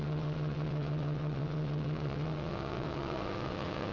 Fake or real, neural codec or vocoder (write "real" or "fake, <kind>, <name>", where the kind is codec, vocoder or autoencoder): fake, vocoder, WaveNeXt